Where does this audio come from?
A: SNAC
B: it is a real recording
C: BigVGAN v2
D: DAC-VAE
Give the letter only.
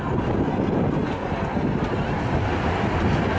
B